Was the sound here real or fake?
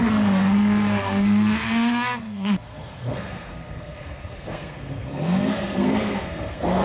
fake